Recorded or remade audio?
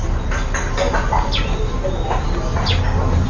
recorded